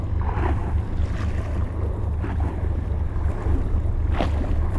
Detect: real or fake real